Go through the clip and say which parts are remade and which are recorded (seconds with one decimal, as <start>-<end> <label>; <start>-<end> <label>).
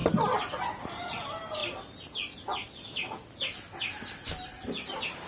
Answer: 0.0-1.6 remade; 1.6-4.2 recorded; 4.2-5.3 remade